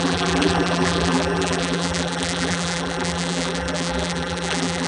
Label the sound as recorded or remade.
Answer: remade